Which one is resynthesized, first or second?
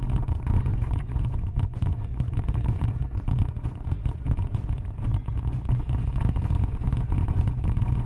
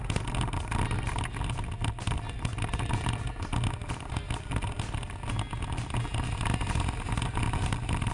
first